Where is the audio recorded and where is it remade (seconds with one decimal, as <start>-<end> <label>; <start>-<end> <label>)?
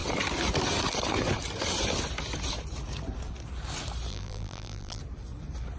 0.0-4.1 recorded; 4.1-5.0 remade; 5.0-5.8 recorded